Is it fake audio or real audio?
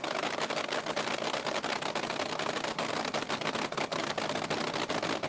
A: real